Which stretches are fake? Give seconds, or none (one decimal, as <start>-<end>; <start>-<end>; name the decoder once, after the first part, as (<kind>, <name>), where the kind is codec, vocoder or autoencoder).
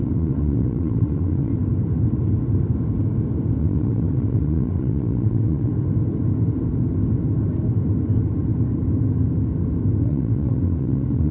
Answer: 0.0-1.5 (vocoder, WaveNeXt); 3.6-5.7; 10.0-11.3